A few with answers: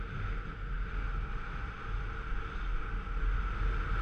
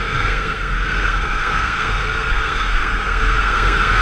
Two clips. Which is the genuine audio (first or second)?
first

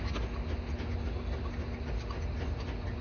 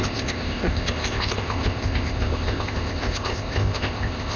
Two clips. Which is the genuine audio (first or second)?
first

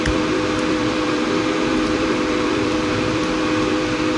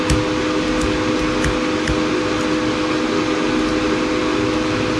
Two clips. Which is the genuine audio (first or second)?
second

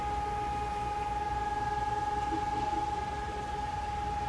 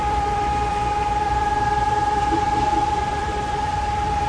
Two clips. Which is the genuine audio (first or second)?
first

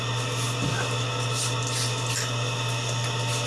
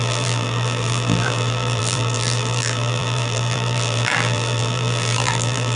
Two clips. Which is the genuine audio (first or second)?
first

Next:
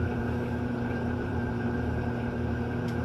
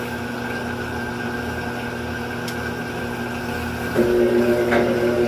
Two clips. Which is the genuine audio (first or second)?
second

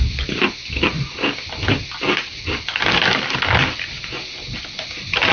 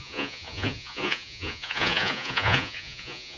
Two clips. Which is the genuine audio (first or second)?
first